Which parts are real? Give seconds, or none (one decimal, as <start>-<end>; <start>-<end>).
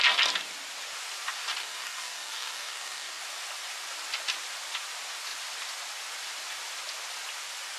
0.0-1.6; 3.2-7.8